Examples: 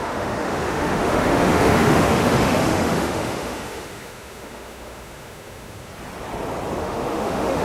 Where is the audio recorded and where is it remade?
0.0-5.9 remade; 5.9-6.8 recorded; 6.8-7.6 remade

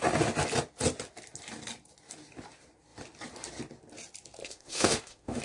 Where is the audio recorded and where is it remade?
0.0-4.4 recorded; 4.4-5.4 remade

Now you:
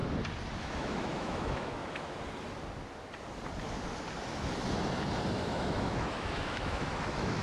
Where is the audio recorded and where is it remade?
0.0-0.6 recorded; 0.6-1.8 remade; 1.8-5.3 recorded; 5.3-7.4 remade

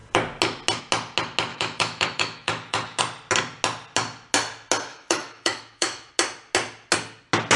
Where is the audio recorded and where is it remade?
0.0-1.5 recorded; 1.5-3.0 remade; 3.0-4.9 recorded; 4.9-6.1 remade; 6.1-7.6 recorded

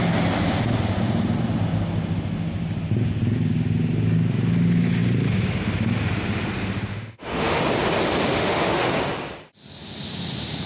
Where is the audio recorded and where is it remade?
0.0-6.9 recorded; 6.9-7.6 remade; 7.6-8.3 recorded; 8.3-8.9 remade; 8.9-10.7 recorded